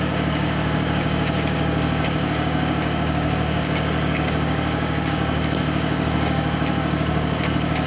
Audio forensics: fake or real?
fake